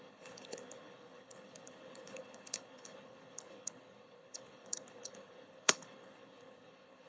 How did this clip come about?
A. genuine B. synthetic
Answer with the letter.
B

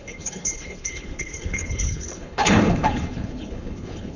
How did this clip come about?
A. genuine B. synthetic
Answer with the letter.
B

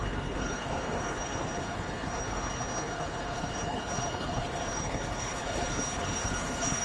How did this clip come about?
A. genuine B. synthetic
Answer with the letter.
B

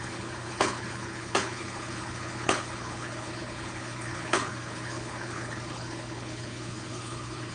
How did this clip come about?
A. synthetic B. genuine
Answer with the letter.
A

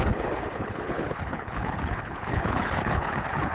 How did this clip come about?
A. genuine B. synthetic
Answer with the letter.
B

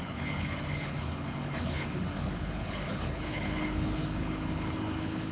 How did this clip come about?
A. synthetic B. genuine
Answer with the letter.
A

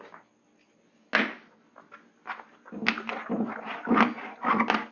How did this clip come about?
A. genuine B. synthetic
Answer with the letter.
A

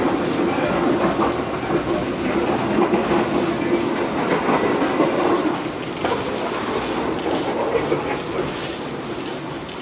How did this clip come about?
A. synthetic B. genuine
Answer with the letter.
B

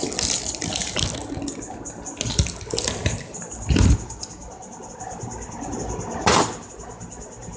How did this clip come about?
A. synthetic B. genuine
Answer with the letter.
B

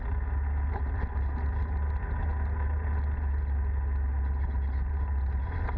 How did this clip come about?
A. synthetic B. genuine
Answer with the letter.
B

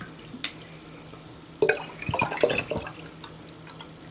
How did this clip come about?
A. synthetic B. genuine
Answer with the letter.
B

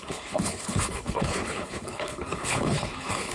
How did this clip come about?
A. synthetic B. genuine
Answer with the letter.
A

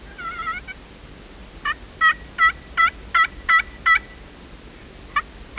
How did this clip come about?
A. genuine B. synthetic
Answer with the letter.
A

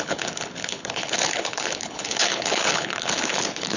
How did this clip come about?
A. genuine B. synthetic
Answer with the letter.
B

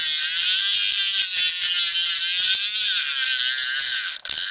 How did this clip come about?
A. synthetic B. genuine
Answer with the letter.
B